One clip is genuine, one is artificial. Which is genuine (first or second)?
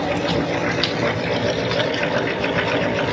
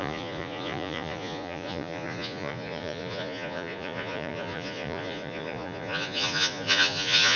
first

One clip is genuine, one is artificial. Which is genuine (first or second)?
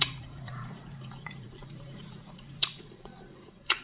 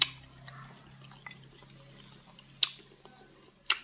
second